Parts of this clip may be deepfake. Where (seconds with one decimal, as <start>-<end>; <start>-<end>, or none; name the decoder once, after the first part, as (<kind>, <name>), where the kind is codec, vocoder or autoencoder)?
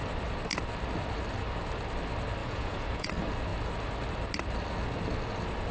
2.4-3.1 (vocoder, Vocos)